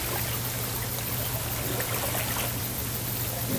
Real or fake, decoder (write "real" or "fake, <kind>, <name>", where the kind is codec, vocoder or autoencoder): real